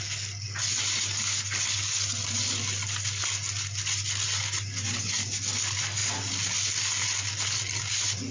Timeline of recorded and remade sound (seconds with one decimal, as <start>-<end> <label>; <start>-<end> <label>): 0.0-8.3 recorded